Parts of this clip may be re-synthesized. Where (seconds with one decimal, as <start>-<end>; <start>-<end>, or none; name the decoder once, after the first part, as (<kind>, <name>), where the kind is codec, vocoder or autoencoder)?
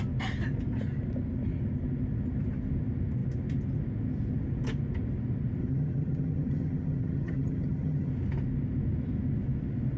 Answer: 5.6-8.1 (vocoder, HiFi-GAN)